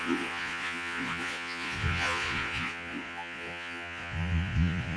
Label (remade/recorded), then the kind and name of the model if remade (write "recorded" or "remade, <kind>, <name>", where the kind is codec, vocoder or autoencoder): remade, vocoder, Vocos